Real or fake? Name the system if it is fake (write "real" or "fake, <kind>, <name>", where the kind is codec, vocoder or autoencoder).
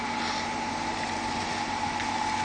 real